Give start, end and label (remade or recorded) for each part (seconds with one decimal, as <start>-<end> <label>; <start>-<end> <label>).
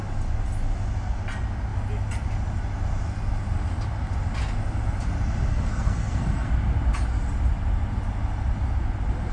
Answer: 0.0-5.5 recorded; 5.5-6.5 remade; 6.5-9.3 recorded